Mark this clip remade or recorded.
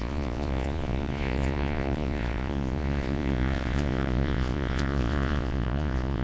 remade